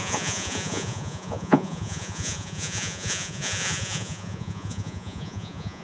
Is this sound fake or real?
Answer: fake